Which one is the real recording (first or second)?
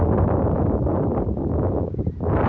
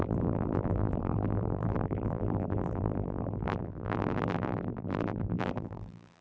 first